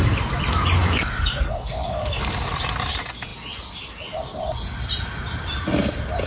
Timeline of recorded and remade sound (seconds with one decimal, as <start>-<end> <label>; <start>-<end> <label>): 0.0-0.8 recorded; 0.8-2.2 remade; 2.2-6.3 recorded